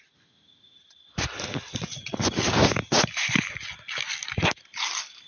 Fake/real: real